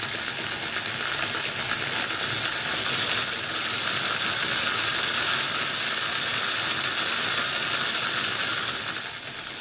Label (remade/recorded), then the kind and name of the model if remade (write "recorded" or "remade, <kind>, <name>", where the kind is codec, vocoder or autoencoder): recorded